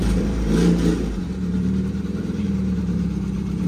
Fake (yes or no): yes